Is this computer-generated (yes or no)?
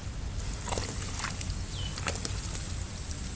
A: no